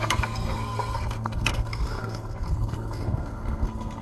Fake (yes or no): yes